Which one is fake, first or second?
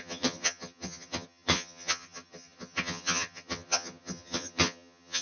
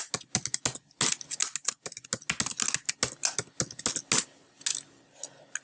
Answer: first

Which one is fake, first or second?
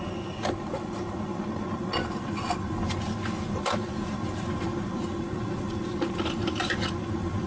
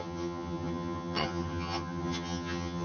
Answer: second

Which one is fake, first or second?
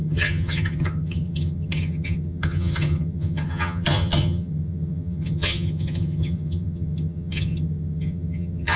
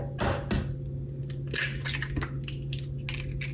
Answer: first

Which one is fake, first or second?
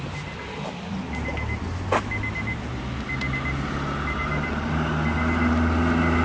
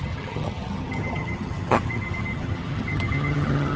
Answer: second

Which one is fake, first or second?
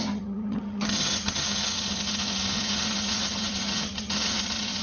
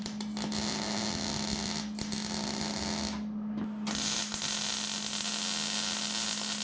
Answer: first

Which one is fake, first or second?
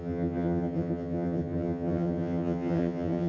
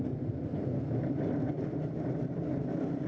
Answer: first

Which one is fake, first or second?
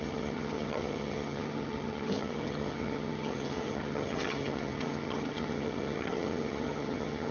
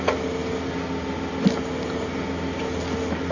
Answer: first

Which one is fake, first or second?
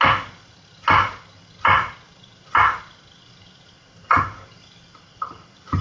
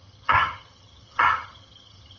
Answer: second